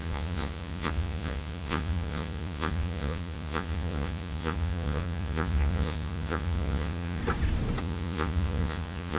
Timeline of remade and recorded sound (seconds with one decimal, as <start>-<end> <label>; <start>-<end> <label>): 0.0-7.2 remade; 7.2-7.8 recorded; 7.8-9.2 remade